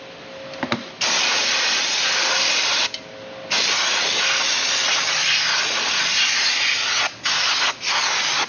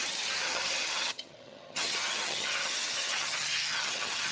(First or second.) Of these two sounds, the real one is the first